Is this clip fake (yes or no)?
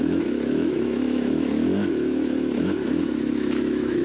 yes